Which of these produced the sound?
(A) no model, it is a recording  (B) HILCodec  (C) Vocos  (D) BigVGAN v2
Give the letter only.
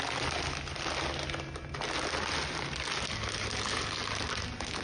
A